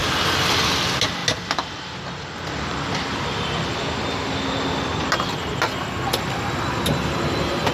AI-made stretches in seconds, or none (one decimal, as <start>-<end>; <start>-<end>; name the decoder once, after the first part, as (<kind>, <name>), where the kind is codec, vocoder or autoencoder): none